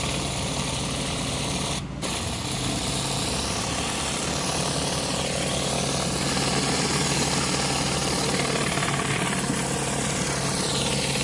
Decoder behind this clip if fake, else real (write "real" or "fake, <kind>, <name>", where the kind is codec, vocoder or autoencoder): real